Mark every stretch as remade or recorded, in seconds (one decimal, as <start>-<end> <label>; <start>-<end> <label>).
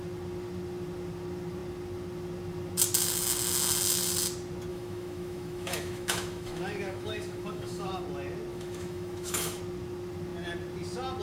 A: 0.0-4.7 recorded; 4.7-8.0 remade; 8.0-8.5 recorded; 8.5-9.6 remade; 9.6-11.2 recorded